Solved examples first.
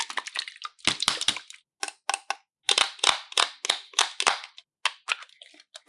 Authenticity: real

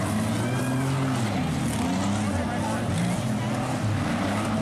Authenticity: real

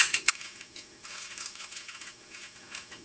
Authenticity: fake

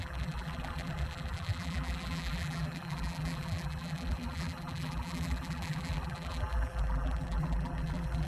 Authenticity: fake